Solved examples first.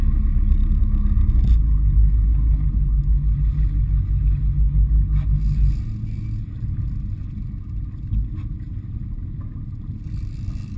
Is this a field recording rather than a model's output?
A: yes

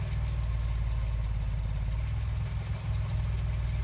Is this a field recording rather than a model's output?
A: yes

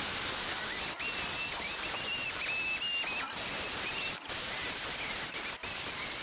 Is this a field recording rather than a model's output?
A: yes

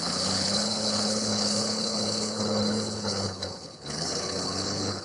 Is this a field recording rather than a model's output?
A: no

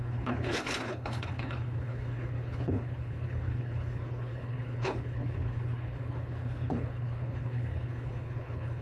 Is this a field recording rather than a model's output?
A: no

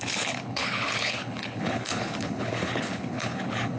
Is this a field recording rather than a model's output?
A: no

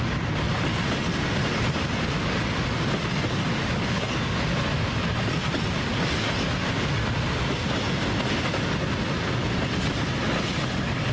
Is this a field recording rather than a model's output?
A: yes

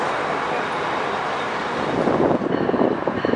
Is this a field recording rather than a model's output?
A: yes